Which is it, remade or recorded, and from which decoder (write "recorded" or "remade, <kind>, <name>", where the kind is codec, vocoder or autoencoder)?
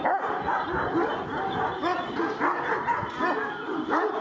recorded